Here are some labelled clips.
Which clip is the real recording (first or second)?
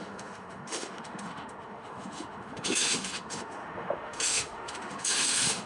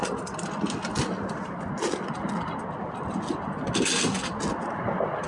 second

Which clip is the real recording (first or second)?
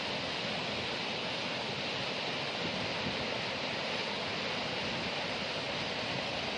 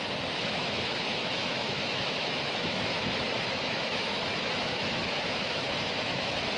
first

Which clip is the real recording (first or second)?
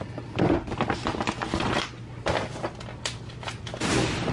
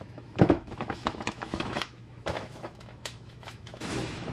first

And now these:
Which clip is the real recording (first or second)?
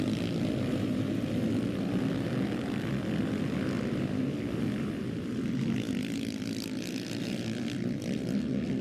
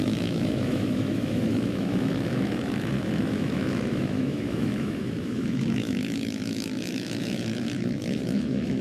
first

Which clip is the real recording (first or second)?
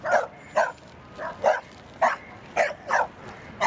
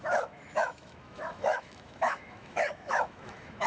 first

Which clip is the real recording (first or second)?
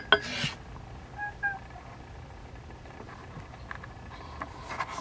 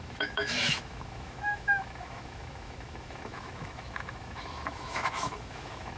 first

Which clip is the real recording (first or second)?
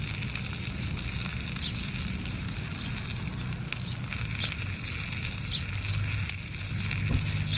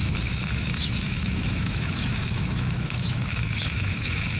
first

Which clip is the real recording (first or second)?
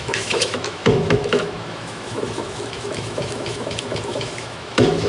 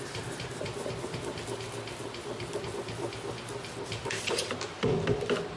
second